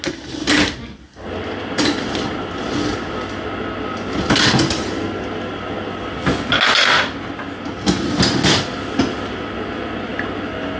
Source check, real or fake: real